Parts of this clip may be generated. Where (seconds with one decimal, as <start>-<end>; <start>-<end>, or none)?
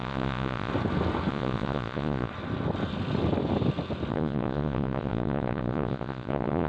0.0-0.7; 1.3-2.3; 4.1-6.7